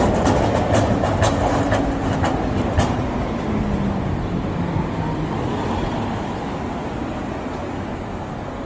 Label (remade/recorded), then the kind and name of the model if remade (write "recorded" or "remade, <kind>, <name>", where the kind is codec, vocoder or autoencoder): recorded